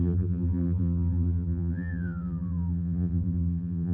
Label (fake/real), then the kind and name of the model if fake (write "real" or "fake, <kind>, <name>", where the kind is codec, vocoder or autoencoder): fake, vocoder, BigVGAN v2